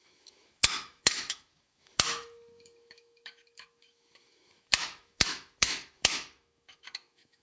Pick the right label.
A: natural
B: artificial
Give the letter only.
B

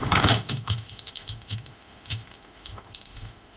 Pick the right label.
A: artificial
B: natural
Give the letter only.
A